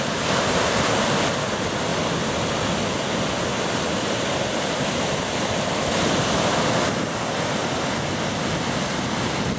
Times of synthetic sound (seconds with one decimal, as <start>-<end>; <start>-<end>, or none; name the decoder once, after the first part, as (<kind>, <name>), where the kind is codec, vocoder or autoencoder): none

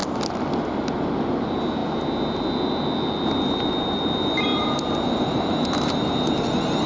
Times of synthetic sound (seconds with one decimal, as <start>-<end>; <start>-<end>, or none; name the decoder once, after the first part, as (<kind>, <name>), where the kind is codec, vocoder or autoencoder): none

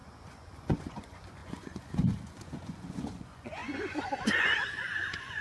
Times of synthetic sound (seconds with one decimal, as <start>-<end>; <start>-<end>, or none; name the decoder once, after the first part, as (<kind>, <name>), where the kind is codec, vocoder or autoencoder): 0.0-5.4 (vocoder, Vocos)

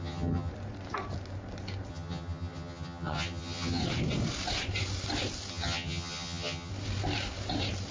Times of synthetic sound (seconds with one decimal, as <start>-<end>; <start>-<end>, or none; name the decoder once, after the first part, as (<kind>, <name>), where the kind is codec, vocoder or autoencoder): 0.0-0.5 (vocoder, HiFi-GAN); 1.9-3.8; 5.5-6.7